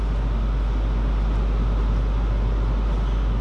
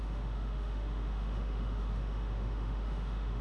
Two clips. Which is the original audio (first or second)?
first